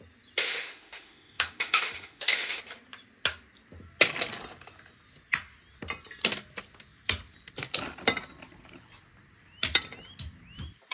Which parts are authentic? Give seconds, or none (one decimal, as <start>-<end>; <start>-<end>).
0.0-0.4; 2.6-10.9